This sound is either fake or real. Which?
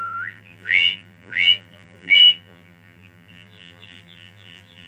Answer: fake